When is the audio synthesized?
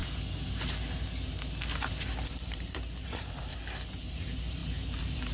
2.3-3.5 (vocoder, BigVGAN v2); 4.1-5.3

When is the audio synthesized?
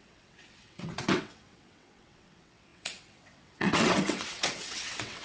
0.0-5.2 (vocoder, WaveNeXt)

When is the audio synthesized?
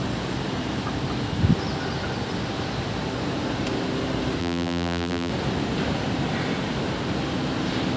4.4-5.3 (vocoder, BigVGAN v2)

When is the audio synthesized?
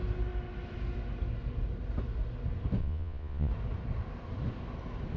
2.8-3.5 (vocoder, Vocos)